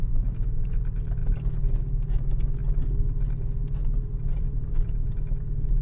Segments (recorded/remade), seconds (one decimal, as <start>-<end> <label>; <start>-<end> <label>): 0.0-3.8 recorded; 3.8-5.8 remade